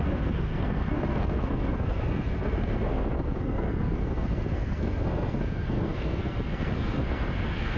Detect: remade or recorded remade